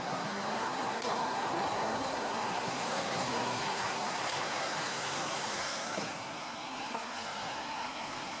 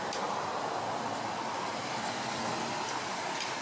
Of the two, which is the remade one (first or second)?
first